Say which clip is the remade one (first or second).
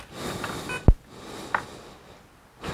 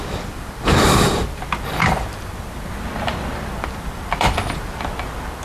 second